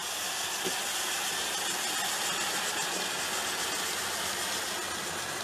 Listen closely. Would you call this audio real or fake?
real